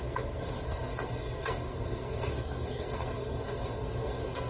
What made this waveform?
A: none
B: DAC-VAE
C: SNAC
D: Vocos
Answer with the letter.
C